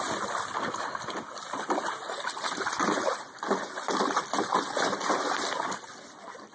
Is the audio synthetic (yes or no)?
no